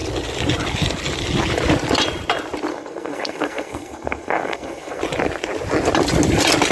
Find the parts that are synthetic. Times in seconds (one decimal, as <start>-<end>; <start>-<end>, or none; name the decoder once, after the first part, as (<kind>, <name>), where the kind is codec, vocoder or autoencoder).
2.7-5.0 (codec, SNAC)